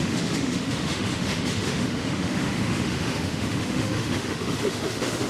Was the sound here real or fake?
fake